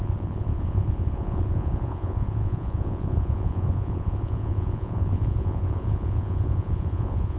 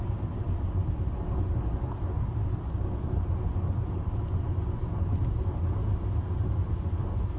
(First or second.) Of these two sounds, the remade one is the first